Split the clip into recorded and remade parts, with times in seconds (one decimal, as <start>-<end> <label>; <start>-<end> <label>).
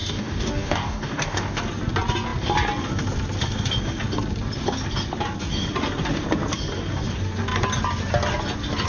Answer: 0.0-1.6 remade; 1.6-8.9 recorded